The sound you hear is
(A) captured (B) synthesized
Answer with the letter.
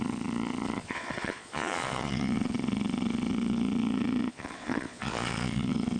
B